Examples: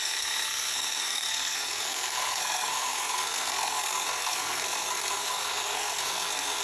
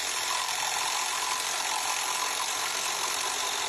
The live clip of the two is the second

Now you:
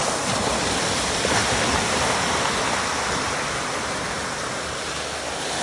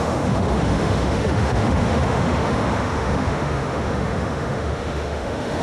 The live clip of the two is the first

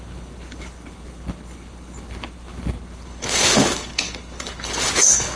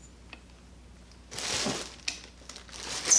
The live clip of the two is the second